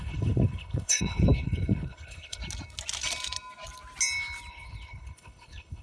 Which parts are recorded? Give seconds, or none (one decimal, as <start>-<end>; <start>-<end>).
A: 2.4-4.5